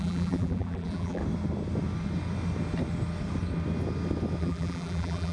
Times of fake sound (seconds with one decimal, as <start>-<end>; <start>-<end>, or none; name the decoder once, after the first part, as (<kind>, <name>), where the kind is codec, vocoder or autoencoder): 0.0-1.2 (vocoder, BigVGAN v2); 4.4-5.3

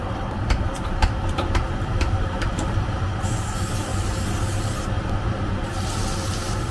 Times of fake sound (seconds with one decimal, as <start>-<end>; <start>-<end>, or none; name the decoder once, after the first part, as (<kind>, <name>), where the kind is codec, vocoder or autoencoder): 0.0-3.9 (vocoder, BigVGAN v2); 4.9-5.7

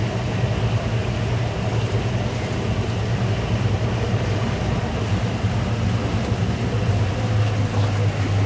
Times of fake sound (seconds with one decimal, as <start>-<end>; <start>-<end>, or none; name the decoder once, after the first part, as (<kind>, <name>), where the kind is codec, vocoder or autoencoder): none